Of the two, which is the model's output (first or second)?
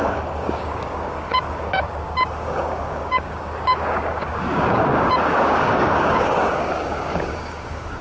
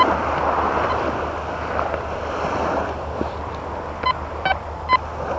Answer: first